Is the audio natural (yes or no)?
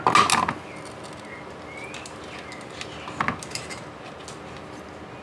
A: yes